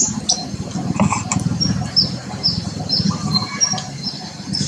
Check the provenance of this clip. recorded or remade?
recorded